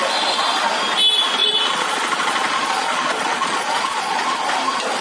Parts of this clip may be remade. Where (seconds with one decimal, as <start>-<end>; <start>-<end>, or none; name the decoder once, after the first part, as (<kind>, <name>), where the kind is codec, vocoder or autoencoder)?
1.4-4.4 (vocoder, Vocos)